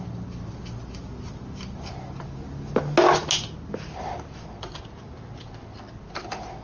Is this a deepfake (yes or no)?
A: no